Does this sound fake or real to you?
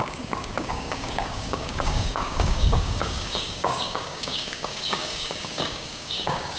fake